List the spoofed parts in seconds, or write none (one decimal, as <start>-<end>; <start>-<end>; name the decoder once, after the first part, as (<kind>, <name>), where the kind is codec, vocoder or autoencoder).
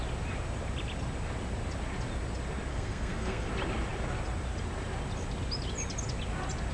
2.7-3.5 (codec, SNAC)